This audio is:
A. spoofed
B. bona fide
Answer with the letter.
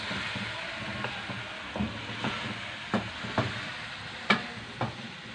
B